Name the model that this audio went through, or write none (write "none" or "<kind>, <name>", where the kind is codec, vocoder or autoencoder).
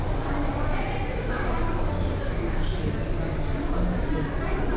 none